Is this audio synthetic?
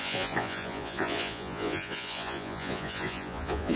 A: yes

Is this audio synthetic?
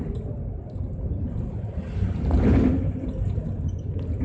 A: no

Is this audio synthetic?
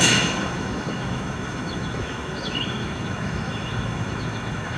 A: yes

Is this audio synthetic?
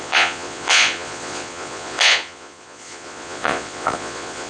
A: yes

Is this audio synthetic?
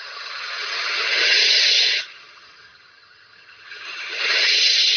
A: yes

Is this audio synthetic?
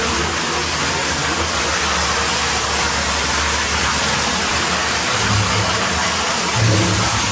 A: no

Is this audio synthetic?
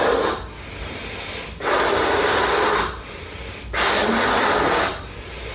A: no